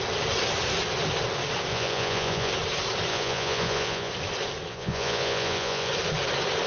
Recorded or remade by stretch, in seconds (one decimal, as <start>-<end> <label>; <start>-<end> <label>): 0.0-1.7 recorded; 1.7-2.5 remade; 2.5-3.1 recorded; 3.1-4.1 remade; 4.1-4.7 recorded; 4.7-5.9 remade; 5.9-6.7 recorded